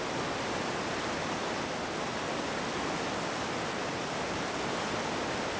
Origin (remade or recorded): recorded